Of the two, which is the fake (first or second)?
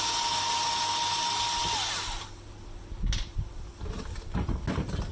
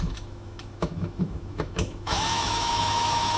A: second